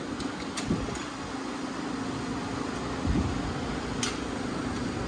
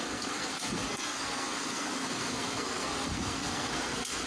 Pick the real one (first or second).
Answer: first